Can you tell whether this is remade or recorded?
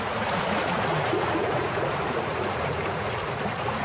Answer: remade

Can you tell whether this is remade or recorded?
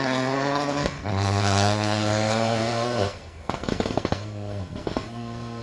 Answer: remade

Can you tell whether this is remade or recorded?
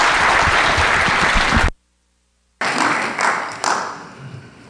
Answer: recorded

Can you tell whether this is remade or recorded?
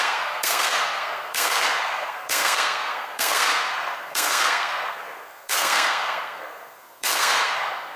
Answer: remade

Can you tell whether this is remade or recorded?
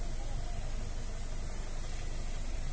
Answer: recorded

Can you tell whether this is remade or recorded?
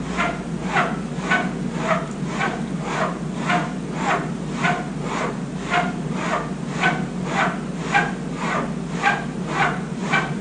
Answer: recorded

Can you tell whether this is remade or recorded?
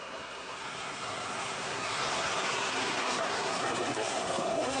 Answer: remade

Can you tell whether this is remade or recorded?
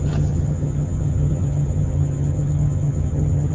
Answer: remade